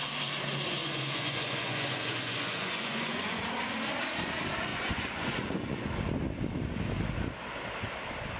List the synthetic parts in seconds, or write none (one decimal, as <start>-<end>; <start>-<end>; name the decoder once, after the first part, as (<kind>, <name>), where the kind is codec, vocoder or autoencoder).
0.8-3.4 (vocoder, Vocos); 4.7-5.9